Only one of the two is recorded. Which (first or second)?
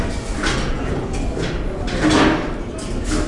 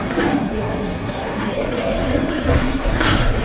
first